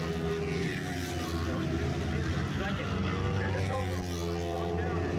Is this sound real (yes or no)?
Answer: yes